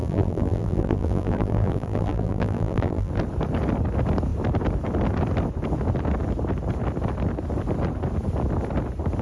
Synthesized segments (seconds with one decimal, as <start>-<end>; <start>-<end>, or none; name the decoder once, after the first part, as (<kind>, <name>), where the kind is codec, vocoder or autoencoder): 0.0-3.1 (vocoder, BigVGAN v2)